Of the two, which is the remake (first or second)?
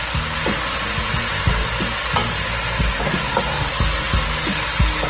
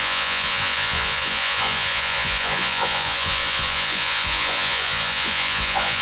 second